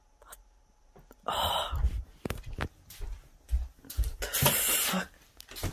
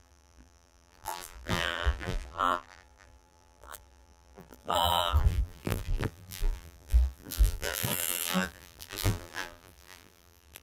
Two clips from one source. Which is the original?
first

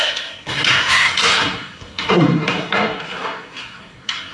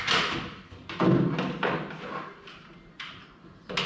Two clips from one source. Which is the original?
second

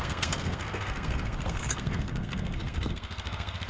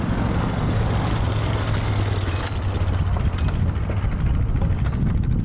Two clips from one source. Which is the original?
second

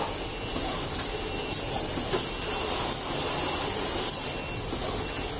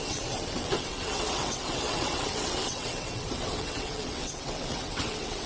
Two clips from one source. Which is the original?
first